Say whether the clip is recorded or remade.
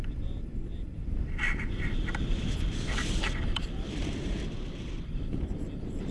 remade